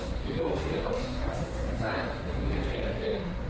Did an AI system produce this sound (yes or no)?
yes